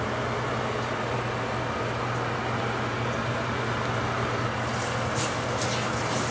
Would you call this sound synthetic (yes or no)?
no